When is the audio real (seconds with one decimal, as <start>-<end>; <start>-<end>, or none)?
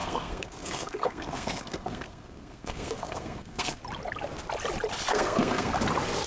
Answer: 3.8-5.1; 5.7-6.3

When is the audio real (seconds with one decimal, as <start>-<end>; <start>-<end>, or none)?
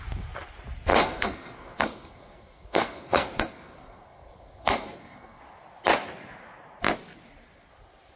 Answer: 0.0-0.9; 5.4-8.2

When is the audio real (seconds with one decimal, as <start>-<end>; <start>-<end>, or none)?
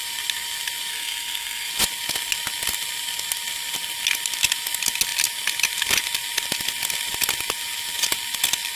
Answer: 0.0-0.9; 1.7-8.8